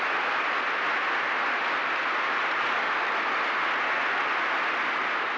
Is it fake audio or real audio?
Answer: real